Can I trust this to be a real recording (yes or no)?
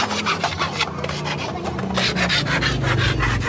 yes